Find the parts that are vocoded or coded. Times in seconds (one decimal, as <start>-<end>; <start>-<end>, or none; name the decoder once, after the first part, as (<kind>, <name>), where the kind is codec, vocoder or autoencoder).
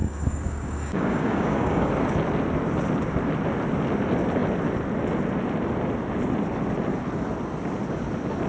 0.0-1.9 (codec, DAC)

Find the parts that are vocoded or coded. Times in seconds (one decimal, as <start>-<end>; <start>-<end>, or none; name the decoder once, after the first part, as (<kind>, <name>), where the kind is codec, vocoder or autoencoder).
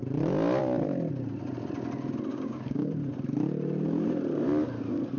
2.3-2.9 (codec, DAC)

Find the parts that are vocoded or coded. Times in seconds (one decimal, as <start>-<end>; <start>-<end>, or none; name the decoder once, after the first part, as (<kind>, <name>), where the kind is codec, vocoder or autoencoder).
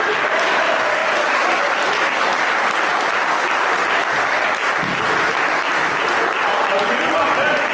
none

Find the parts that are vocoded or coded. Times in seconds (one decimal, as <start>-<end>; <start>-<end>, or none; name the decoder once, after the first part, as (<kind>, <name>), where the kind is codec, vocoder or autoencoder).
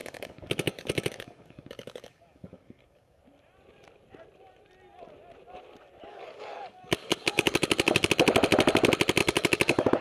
0.0-3.2 (codec, DAC); 6.1-8.1; 9.2-10.0